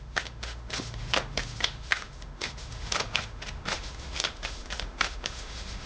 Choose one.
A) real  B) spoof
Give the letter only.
B